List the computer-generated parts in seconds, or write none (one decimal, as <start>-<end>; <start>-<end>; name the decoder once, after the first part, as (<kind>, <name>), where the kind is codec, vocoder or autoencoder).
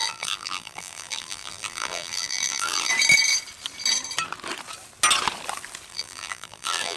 0.0-2.9 (vocoder, BigVGAN v2); 5.9-7.0